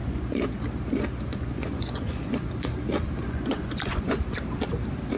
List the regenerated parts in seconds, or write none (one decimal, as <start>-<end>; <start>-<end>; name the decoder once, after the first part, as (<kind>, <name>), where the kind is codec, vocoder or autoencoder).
0.0-0.5 (vocoder, Vocos); 1.3-2.3; 3.2-4.2